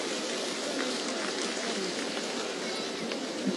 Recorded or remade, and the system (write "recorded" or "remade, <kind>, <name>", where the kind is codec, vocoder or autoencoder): recorded